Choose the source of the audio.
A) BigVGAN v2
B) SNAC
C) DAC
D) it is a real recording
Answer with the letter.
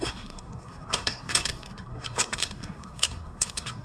B